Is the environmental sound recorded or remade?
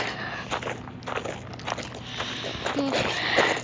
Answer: recorded